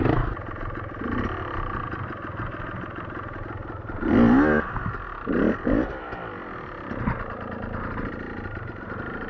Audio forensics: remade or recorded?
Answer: recorded